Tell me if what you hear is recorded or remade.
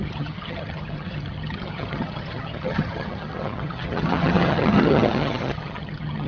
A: remade